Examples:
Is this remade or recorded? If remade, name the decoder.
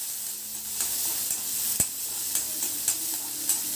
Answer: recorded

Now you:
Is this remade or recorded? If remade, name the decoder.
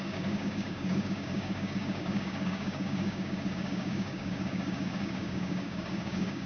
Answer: remade, codec, DAC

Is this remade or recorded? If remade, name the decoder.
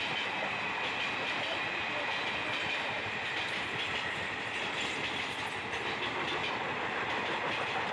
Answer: recorded